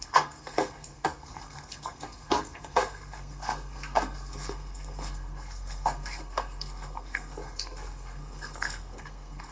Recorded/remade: remade